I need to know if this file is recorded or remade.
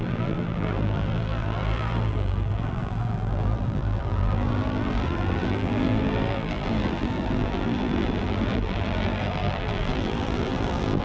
remade